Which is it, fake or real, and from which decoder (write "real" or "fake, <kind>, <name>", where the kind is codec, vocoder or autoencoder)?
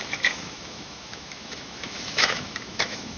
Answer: fake, autoencoder, DAC-VAE